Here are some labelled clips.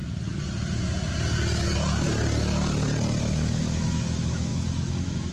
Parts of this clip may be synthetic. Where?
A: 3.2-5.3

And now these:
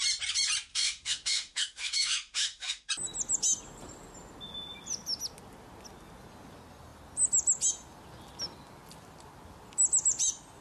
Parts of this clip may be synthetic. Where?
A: 0.7-2.9

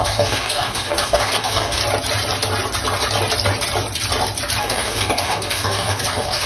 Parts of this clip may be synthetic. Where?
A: 0.0-1.8; 4.6-6.5

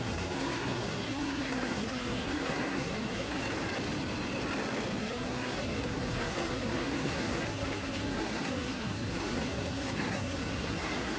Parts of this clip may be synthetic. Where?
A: 0.0-3.4; 5.0-11.2

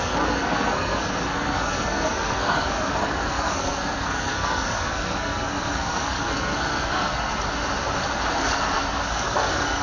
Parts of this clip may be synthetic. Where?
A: 0.0-7.3; 8.3-9.8

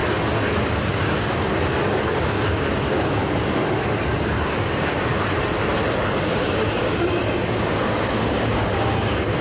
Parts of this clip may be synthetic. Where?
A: 2.1-3.2; 4.2-5.1; 6.2-9.4

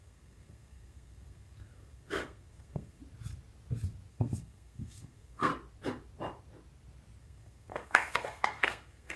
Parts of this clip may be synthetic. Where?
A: 0.0-3.0; 4.1-5.5; 7.2-9.2

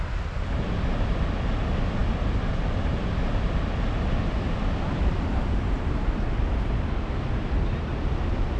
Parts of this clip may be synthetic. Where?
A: none